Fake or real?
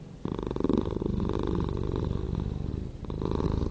real